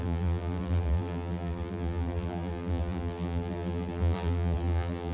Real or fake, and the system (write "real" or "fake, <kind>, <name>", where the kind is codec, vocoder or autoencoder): fake, vocoder, BigVGAN v2